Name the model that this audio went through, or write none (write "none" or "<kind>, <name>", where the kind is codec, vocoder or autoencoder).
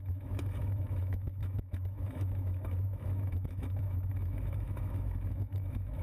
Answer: autoencoder, DAC-VAE